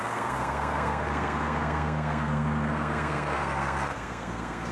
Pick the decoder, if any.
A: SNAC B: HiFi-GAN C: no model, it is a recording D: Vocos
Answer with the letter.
A